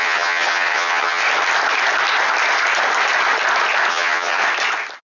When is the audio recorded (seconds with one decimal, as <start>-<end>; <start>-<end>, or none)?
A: 1.2-3.9; 4.4-5.2